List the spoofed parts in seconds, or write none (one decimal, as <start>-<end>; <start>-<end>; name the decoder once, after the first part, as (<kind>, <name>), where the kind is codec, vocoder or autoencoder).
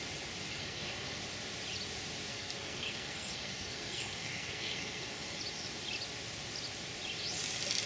0.5-1.2 (codec, SNAC); 2.3-5.4